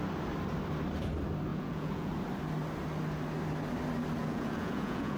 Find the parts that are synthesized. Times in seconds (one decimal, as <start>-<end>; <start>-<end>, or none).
1.5-2.1; 4.2-5.2